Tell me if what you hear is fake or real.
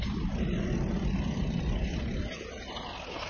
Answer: real